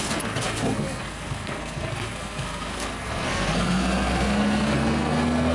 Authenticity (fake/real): fake